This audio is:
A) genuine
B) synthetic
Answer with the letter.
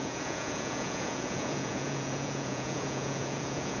B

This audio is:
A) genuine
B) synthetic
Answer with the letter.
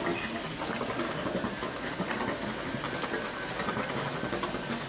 A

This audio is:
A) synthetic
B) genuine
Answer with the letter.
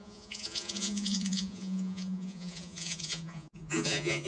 A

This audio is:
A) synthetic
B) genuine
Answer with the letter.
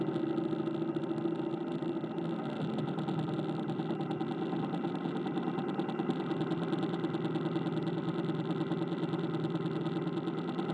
B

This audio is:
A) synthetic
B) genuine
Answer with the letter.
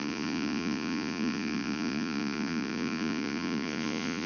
A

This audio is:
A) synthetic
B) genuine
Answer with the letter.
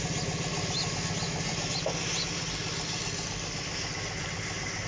B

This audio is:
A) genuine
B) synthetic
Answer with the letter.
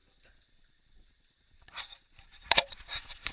B